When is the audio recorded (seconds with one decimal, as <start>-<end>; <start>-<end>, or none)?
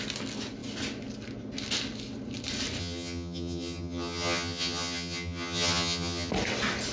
0.0-2.8; 6.3-6.9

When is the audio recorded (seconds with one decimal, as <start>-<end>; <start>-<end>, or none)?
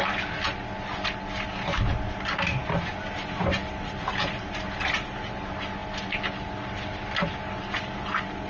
0.0-8.5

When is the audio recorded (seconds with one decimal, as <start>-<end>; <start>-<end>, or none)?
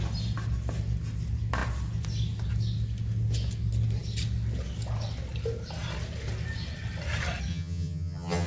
0.0-7.5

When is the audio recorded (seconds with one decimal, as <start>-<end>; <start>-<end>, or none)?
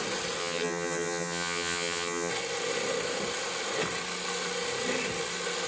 0.0-0.4; 2.3-5.7